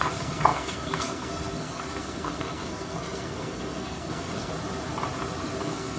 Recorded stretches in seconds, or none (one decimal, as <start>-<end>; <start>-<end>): 4.5-5.6